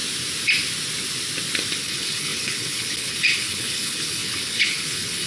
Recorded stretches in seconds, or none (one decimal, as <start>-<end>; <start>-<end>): 0.0-1.8